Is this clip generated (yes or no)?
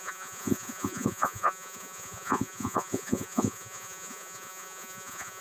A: yes